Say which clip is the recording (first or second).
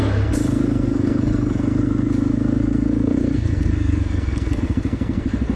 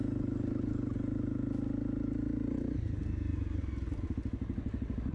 second